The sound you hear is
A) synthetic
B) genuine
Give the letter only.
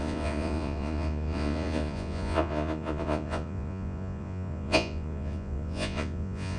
A